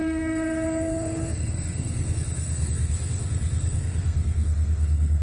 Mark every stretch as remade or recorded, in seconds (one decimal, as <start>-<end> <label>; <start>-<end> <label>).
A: 0.0-5.2 remade